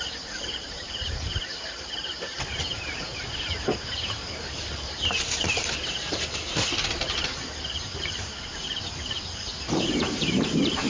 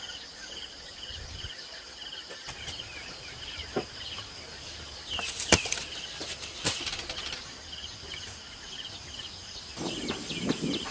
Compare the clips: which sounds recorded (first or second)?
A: second